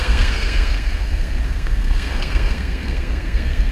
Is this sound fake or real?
fake